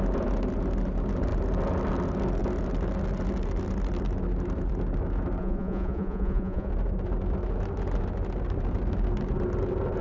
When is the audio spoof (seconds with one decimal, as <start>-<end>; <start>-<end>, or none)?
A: 5.4-6.7